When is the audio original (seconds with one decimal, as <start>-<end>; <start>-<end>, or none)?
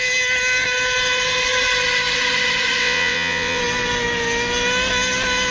0.0-2.8; 3.6-5.5